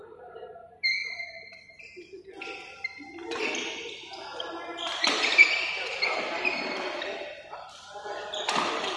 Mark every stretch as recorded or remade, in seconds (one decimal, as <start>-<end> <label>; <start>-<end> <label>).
0.0-1.0 recorded; 1.0-2.2 remade; 2.2-4.3 recorded; 4.3-5.9 remade; 5.9-9.0 recorded

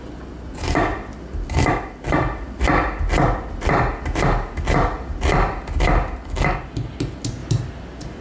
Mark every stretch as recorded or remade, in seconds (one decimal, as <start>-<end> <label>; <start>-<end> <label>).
0.0-7.4 recorded; 7.4-8.2 remade

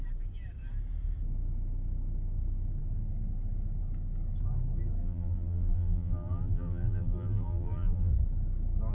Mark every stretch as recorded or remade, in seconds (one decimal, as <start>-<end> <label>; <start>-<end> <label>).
0.0-5.0 recorded; 5.0-8.1 remade; 8.1-8.9 recorded

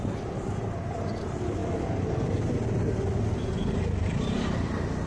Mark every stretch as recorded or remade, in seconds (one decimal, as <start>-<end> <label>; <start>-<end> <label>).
0.0-1.6 remade; 1.6-3.8 recorded; 3.8-5.1 remade

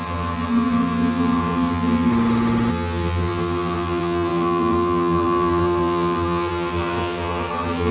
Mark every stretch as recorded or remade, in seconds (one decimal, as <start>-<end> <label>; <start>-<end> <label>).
0.0-2.1 remade; 2.1-2.7 recorded; 2.7-7.9 remade

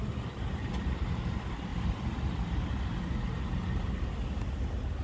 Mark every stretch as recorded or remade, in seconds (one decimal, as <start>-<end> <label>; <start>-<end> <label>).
0.0-1.7 recorded; 1.7-3.3 remade; 3.3-5.0 recorded